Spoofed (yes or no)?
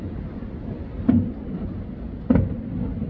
no